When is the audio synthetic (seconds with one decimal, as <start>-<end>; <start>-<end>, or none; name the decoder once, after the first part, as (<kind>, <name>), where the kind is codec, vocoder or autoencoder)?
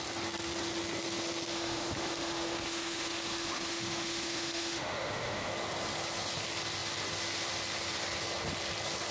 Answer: 1.5-5.5 (autoencoder, DAC-VAE)